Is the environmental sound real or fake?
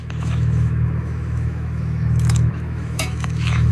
fake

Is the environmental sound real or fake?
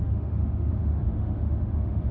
fake